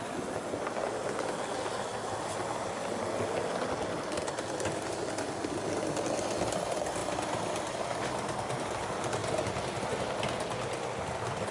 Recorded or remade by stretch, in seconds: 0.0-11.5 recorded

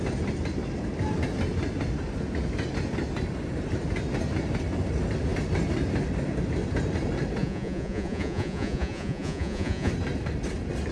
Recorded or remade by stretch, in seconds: 0.0-7.4 recorded; 7.4-9.9 remade; 9.9-10.9 recorded

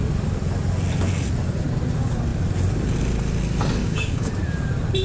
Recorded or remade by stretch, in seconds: 0.0-3.8 recorded; 3.8-4.3 remade; 4.3-5.0 recorded

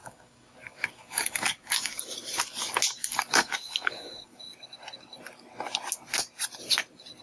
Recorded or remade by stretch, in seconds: 0.0-2.0 remade; 2.0-3.0 recorded; 3.0-4.4 remade; 4.4-7.2 recorded